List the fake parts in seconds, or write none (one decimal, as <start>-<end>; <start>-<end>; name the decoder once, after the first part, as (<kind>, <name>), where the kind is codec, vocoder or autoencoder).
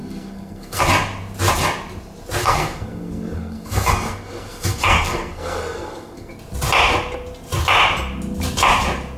0.0-0.8 (codec, SNAC); 2.4-6.3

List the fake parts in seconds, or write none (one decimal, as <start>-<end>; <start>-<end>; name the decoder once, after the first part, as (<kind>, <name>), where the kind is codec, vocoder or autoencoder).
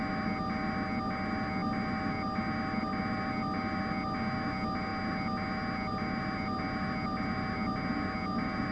none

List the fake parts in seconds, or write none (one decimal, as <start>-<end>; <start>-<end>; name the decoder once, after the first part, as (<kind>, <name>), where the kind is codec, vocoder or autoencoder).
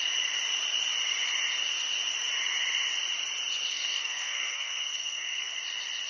3.7-5.6 (codec, SNAC)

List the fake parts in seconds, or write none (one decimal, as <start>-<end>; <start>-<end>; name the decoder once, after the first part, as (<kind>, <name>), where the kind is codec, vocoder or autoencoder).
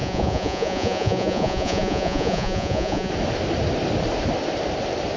0.0-3.1 (vocoder, Vocos)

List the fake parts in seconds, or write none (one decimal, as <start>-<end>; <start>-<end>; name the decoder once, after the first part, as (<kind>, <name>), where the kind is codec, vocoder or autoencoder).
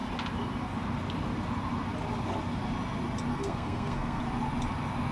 3.3-4.2 (codec, SNAC)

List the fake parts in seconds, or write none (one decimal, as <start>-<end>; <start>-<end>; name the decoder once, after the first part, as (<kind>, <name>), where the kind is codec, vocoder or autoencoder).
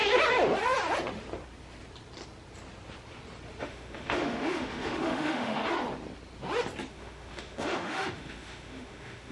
3.6-5.6 (autoencoder, DAC-VAE); 6.9-9.3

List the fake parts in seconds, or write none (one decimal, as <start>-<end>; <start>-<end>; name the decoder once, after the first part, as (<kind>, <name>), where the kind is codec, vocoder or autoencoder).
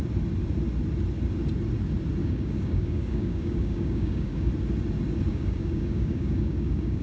2.2-4.5 (codec, DAC); 5.3-7.0